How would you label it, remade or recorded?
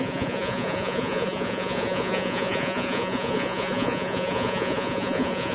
remade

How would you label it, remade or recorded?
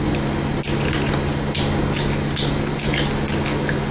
recorded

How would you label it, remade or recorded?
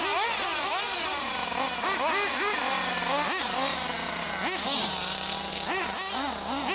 recorded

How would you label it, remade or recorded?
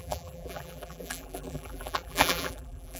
remade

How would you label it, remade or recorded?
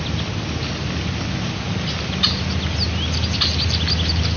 recorded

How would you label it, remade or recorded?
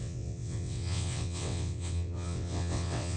remade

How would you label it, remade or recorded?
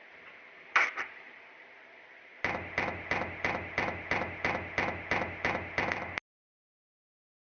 recorded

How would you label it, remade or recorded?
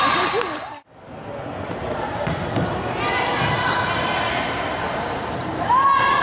recorded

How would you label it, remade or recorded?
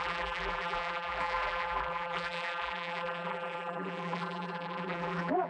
remade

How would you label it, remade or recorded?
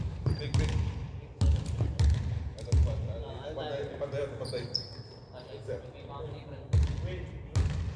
recorded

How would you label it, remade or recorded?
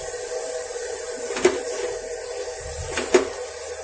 recorded